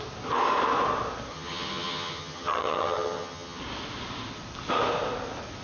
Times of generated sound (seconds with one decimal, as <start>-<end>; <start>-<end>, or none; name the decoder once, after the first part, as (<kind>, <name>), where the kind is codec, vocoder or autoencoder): 1.3-3.6 (vocoder, HiFi-GAN)